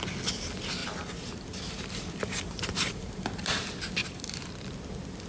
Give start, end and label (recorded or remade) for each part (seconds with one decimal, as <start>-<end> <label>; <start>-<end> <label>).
0.0-0.8 recorded; 0.8-3.6 remade; 3.6-4.0 recorded; 4.0-4.7 remade; 4.7-5.3 recorded